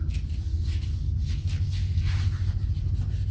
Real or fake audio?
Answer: real